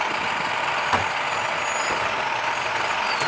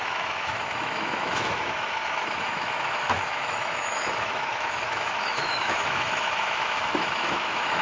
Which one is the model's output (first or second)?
second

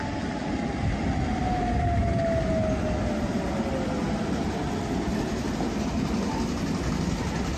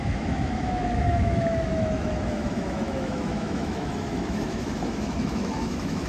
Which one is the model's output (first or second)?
second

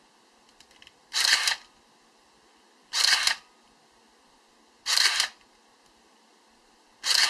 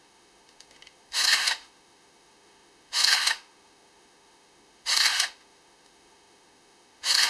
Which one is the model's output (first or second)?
second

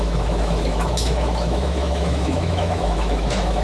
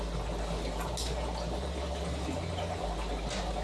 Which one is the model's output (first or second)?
first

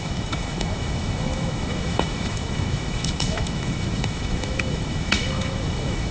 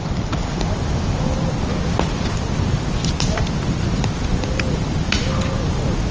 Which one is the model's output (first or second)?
first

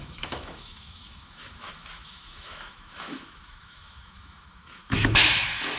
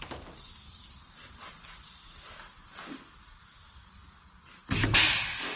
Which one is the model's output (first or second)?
first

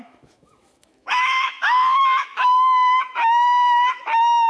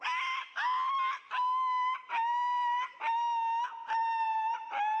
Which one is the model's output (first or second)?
first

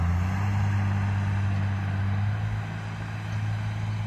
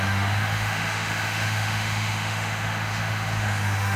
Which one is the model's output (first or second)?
second